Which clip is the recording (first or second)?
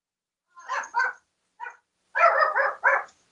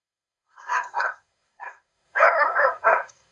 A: first